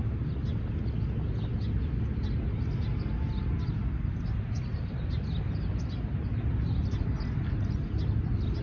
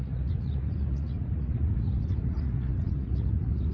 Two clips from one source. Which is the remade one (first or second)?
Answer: second